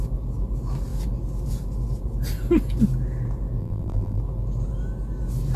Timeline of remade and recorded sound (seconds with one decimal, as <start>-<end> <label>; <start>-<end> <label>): 0.0-3.6 recorded; 3.6-4.2 remade; 4.2-5.6 recorded